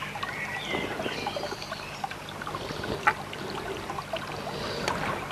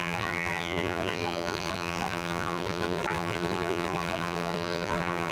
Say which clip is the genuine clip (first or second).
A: first